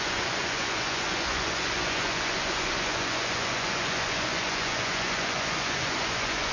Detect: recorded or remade remade